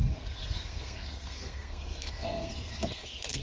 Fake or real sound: fake